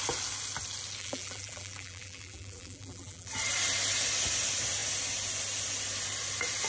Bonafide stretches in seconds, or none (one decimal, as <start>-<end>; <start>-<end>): 0.0-1.0; 3.3-6.7